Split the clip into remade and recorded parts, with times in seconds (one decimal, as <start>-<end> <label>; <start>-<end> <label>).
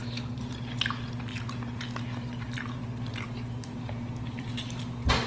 0.0-0.9 remade; 0.9-1.3 recorded; 1.3-4.5 remade; 4.5-5.3 recorded